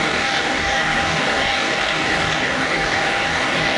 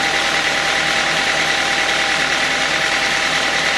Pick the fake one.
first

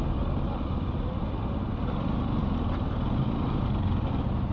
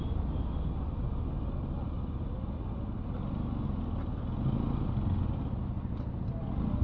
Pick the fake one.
first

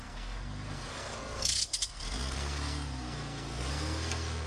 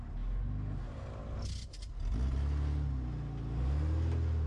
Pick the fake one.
first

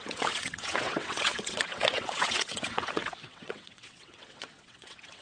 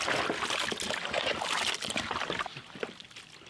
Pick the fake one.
first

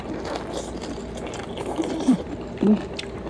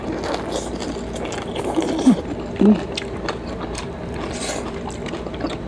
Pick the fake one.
first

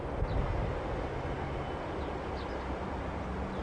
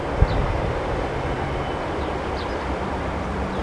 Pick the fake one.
second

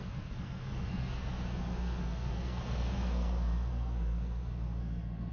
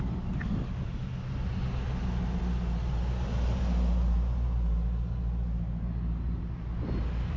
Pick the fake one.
first